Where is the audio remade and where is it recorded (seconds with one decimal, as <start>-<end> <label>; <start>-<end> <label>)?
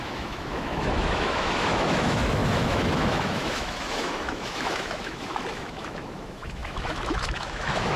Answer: 0.0-8.0 remade